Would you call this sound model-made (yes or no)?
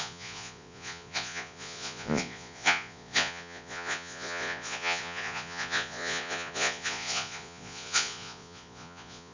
yes